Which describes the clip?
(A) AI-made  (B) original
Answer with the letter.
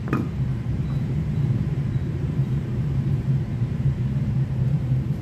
A